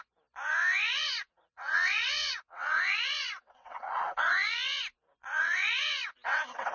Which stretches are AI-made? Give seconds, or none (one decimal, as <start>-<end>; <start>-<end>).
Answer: 0.8-4.8; 5.4-6.7

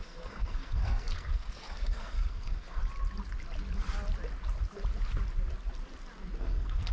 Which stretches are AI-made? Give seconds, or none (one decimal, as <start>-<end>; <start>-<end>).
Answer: 0.0-2.8; 6.4-6.9

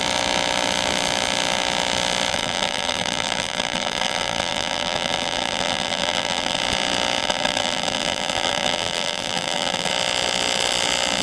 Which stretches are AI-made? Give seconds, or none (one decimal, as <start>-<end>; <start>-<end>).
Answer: 2.3-6.6; 7.2-9.9

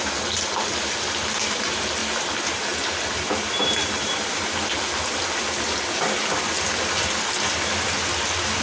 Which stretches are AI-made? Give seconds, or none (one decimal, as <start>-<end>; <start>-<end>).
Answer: none